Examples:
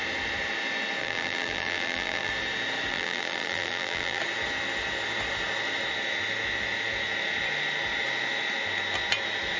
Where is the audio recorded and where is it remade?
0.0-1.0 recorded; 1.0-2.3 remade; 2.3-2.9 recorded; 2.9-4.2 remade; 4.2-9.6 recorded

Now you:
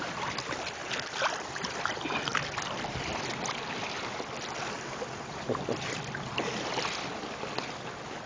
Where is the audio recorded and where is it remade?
0.0-8.3 remade

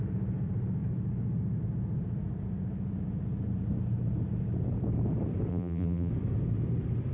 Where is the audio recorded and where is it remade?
0.0-5.5 recorded; 5.5-6.1 remade; 6.1-7.1 recorded

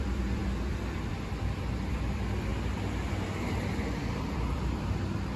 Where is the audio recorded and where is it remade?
0.0-2.5 remade; 2.5-4.1 recorded; 4.1-5.4 remade

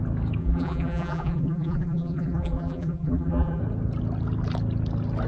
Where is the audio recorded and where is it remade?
0.0-0.4 recorded; 0.4-3.6 remade; 3.6-5.3 recorded